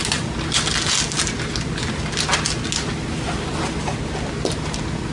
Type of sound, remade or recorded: recorded